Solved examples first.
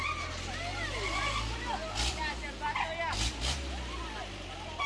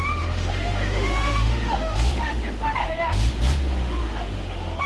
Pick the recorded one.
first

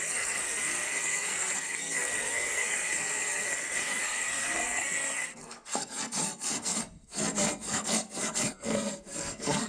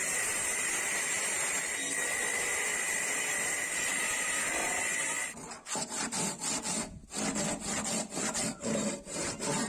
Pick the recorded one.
second